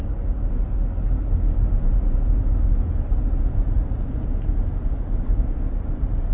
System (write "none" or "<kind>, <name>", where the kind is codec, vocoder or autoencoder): none